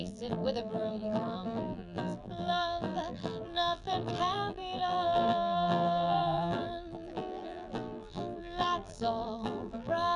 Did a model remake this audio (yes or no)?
yes